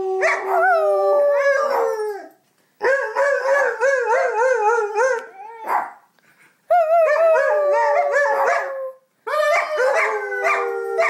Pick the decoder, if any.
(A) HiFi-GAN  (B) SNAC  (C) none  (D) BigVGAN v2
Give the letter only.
C